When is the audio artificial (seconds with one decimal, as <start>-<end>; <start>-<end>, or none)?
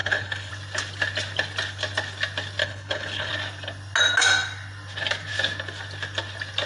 0.0-0.5; 2.6-3.3